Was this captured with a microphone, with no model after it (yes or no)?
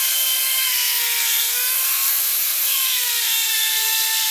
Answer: no